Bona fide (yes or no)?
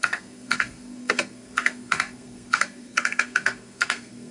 no